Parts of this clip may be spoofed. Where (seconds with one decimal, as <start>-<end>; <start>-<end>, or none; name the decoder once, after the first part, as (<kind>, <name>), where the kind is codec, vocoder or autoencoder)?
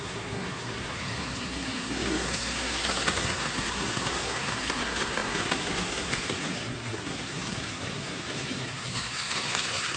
0.0-10.0 (codec, SNAC)